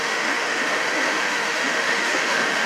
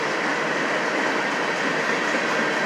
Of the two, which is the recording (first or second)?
second